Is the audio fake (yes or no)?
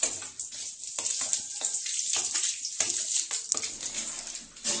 no